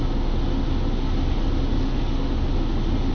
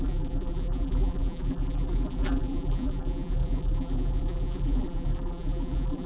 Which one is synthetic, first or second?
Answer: second